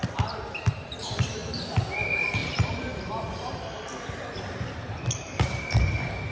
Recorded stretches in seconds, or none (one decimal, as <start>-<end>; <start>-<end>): 1.4-2.0